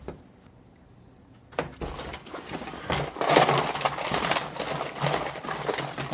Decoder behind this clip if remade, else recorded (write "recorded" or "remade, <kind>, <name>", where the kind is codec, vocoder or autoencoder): recorded